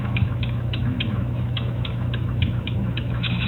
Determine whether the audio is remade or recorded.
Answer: remade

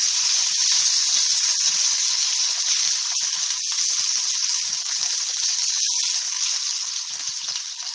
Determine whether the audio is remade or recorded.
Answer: recorded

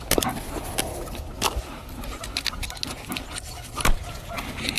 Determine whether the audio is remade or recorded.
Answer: recorded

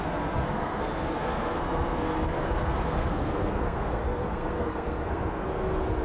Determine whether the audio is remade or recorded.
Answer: remade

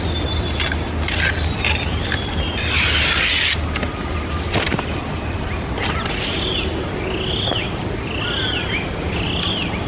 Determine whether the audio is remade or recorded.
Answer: recorded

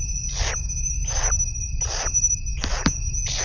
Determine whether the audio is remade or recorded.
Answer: recorded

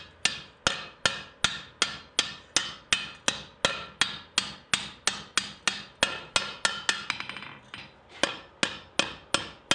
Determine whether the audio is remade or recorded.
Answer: recorded